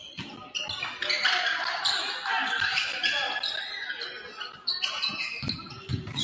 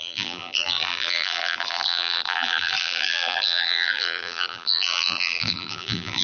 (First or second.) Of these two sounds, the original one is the first